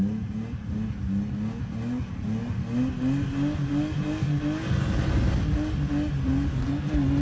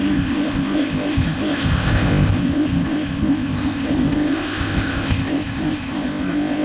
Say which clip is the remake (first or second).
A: second